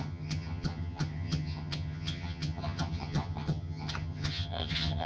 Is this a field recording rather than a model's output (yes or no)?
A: no